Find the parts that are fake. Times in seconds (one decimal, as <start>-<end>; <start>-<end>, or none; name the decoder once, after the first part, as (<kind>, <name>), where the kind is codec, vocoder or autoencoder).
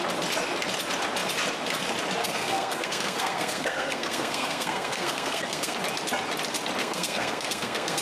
2.2-5.8 (codec, SNAC); 6.8-8.0